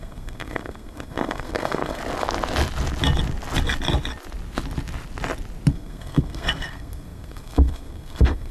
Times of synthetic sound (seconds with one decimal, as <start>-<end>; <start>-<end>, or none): 0.0-2.0; 5.7-8.5